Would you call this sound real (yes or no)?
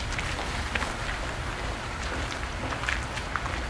yes